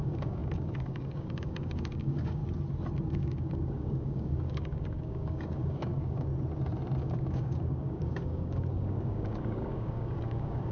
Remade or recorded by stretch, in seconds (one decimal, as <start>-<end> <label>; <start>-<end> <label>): 0.0-2.4 remade; 2.4-3.1 recorded; 3.1-6.3 remade; 6.3-7.0 recorded; 7.0-10.7 remade